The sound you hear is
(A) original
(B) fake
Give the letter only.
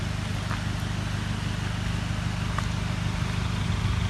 A